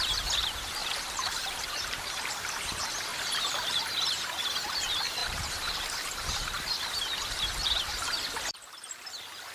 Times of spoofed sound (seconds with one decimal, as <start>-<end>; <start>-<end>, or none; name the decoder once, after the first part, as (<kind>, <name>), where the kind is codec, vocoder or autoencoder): 0.8-2.1 (vocoder, BigVGAN v2); 3.1-3.8; 5.2-6.7